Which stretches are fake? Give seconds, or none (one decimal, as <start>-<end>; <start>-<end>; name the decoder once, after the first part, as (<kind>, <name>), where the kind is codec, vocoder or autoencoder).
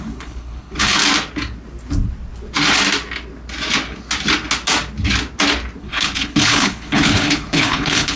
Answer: 0.0-1.0 (codec, HILCodec); 5.8-8.2